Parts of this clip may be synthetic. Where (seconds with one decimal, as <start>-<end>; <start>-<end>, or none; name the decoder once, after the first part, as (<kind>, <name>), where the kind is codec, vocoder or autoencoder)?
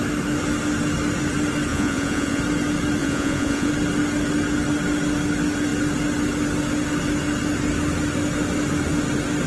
1.7-2.4 (vocoder, Vocos); 3.0-3.7